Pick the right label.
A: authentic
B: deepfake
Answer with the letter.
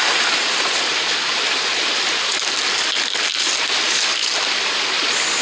A